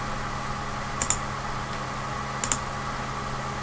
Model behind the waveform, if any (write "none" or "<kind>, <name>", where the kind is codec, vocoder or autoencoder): none